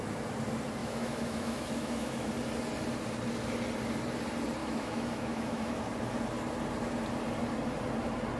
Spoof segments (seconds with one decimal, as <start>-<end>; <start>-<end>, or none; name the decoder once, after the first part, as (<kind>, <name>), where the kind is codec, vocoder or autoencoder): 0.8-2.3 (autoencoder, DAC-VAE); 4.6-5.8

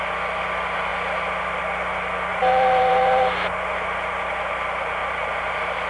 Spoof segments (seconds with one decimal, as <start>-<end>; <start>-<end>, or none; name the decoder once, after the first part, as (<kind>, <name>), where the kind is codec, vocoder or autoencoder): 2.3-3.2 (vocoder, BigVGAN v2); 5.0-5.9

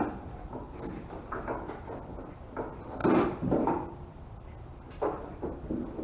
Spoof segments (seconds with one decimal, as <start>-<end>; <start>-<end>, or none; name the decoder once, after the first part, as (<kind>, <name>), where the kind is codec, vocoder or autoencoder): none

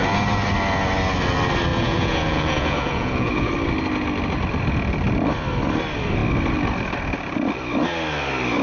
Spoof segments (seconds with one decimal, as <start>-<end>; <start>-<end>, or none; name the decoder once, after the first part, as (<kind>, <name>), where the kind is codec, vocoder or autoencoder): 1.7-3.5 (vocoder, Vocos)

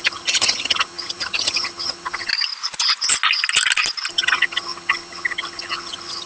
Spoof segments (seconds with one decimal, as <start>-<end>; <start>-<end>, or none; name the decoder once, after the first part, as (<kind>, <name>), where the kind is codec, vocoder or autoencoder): 0.0-2.3 (vocoder, HiFi-GAN); 4.1-6.3

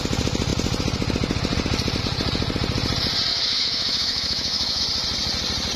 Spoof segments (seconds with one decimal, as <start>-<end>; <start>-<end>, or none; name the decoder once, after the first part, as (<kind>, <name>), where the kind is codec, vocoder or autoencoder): 3.3-4.8 (autoencoder, DAC-VAE)

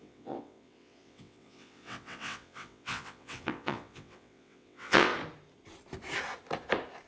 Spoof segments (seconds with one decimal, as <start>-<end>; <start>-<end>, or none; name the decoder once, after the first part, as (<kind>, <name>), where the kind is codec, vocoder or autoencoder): 0.0-5.1 (vocoder, WaveNeXt)